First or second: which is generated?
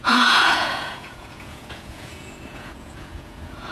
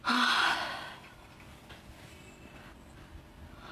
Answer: first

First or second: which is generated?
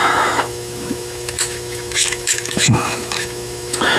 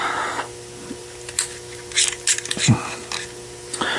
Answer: first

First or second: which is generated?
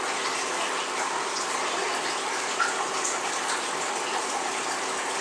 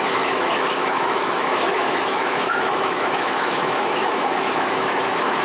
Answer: second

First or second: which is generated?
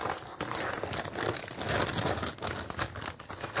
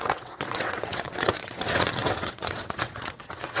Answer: second